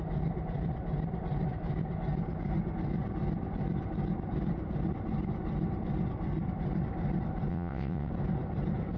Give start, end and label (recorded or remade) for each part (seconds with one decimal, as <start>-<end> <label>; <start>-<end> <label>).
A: 0.0-7.5 recorded; 7.5-8.1 remade; 8.1-9.0 recorded

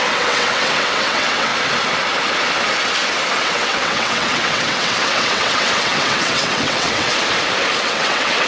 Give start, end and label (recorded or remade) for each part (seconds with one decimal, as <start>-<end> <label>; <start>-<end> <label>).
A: 0.0-1.5 remade; 1.5-3.4 recorded; 3.4-7.1 remade; 7.1-7.8 recorded; 7.8-8.5 remade

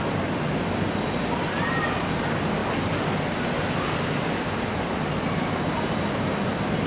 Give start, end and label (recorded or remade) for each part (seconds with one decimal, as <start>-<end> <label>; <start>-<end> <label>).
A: 0.0-6.9 recorded

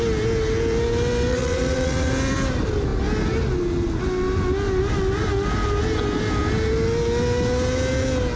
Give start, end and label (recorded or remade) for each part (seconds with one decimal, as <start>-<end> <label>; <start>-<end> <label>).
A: 0.0-1.3 recorded; 1.3-2.1 remade; 2.1-8.4 recorded

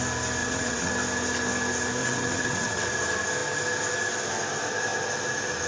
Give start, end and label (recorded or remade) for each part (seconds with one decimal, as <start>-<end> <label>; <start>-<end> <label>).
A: 0.0-0.4 recorded; 0.4-0.9 remade; 0.9-2.0 recorded; 2.0-2.9 remade; 2.9-5.7 recorded

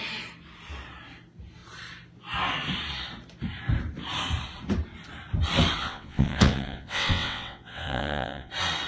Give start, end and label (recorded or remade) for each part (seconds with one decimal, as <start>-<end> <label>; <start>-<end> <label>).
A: 0.0-5.8 recorded; 5.8-8.5 remade; 8.5-8.9 recorded

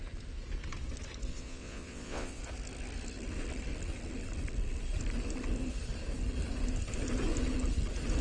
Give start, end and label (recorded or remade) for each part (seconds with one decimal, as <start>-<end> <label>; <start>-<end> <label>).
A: 0.0-1.3 recorded; 1.3-2.4 remade; 2.4-8.2 recorded